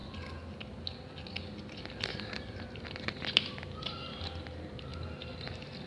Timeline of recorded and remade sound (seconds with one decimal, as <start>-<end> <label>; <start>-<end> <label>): 0.0-5.9 recorded